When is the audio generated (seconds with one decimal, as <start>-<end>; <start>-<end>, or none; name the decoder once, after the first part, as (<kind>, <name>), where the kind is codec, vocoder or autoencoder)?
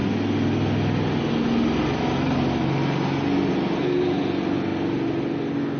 none